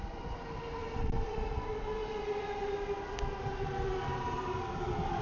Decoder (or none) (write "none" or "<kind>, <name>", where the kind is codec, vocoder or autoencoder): none